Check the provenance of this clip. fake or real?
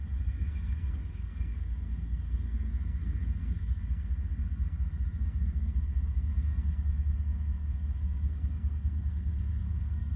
fake